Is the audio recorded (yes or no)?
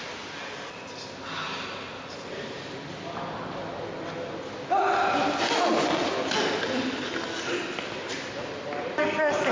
yes